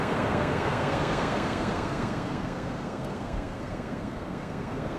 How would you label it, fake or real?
fake